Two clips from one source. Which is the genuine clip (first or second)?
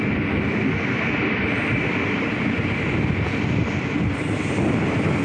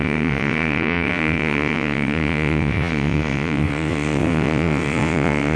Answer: first